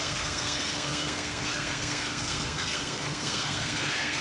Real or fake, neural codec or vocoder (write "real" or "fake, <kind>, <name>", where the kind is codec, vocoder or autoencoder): fake, codec, SNAC